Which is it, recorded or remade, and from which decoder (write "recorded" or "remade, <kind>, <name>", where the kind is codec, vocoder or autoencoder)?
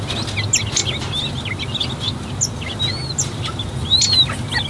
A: recorded